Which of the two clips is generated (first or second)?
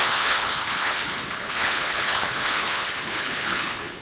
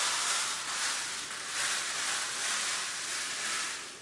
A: first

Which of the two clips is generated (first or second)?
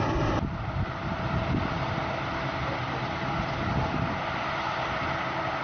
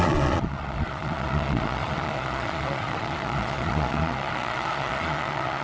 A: second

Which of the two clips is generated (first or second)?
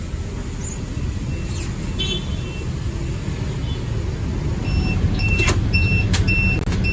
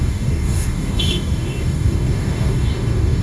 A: second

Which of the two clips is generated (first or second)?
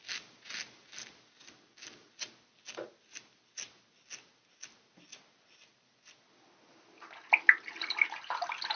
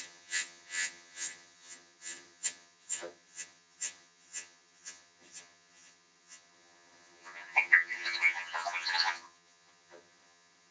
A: second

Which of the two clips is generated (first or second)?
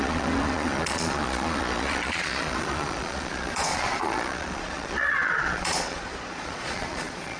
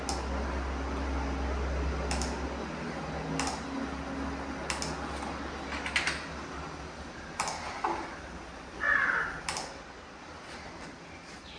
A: first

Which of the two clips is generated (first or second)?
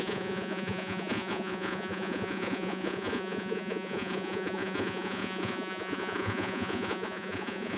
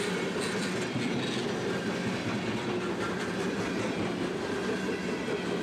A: first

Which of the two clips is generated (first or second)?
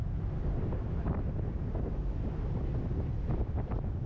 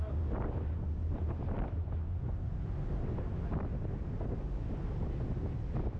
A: first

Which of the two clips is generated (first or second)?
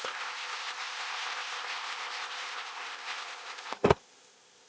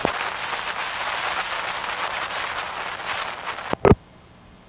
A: first